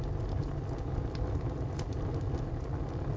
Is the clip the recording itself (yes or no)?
yes